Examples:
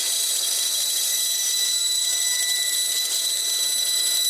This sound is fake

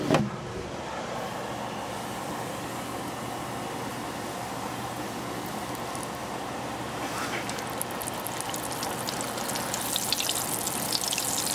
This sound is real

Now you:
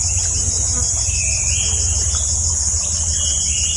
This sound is real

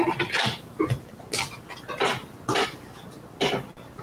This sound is real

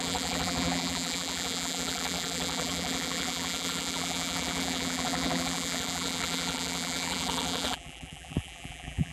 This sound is fake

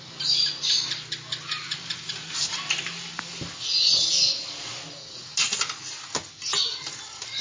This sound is real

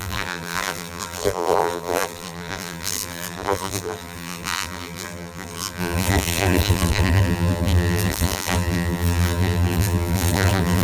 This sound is fake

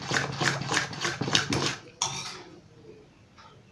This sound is real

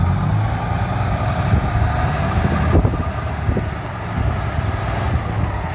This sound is real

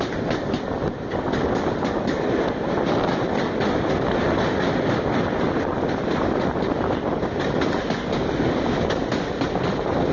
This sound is real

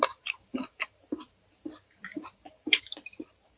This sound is fake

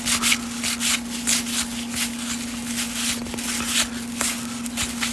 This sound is real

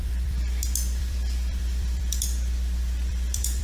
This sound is fake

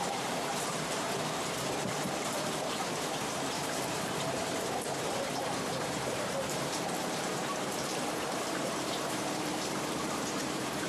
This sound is fake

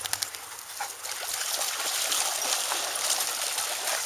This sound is real